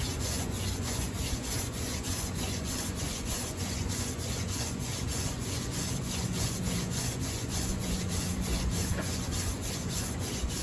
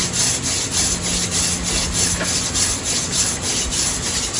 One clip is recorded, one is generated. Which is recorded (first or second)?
second